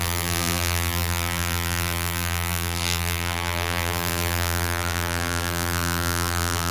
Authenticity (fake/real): fake